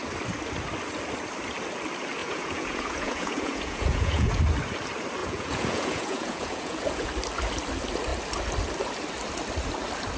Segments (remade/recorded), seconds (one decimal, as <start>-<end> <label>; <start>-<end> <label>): 0.0-2.2 recorded; 2.2-4.4 remade; 4.4-5.2 recorded; 5.2-7.1 remade; 7.1-10.2 recorded